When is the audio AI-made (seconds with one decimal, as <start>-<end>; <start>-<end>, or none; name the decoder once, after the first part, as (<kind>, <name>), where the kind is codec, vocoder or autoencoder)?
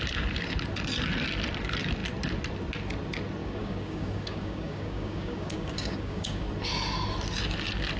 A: 3.4-6.5 (codec, DAC)